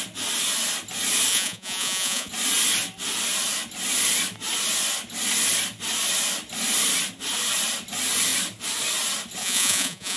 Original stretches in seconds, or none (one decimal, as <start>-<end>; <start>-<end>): 0.0-1.3; 2.3-9.4